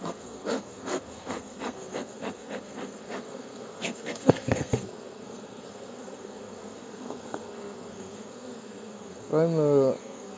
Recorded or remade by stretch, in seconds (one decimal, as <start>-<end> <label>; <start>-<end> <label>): 0.0-9.3 remade; 9.3-10.0 recorded; 10.0-10.4 remade